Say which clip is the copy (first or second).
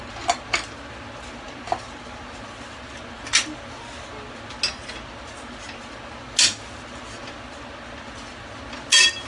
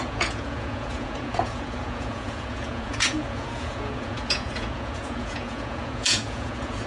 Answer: second